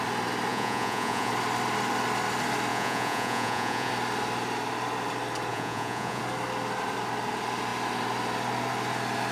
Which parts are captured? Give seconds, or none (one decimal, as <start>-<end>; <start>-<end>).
0.0-0.5; 1.3-2.7; 3.9-5.5; 6.2-9.3